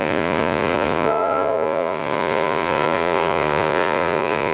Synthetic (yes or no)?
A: yes